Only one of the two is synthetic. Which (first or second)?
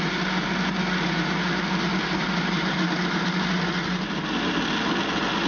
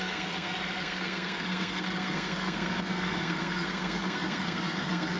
second